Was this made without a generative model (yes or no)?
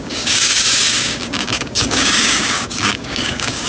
no